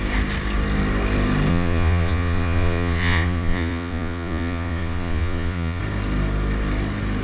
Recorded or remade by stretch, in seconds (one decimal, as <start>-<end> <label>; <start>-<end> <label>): 0.0-1.5 recorded; 1.5-5.8 remade; 5.8-7.2 recorded